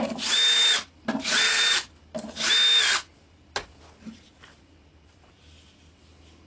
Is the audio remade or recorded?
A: recorded